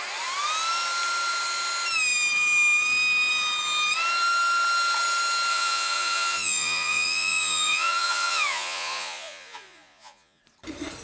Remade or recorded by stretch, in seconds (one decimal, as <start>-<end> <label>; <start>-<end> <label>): 0.0-5.5 recorded; 5.5-10.4 remade; 10.4-11.0 recorded

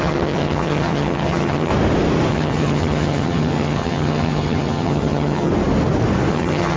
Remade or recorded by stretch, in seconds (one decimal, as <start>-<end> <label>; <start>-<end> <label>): 0.0-1.7 remade; 1.7-2.3 recorded; 2.3-5.5 remade; 5.5-6.3 recorded; 6.3-6.8 remade